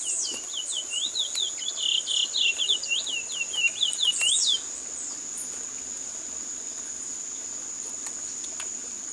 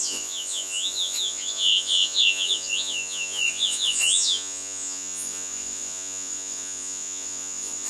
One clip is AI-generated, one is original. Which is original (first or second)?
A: first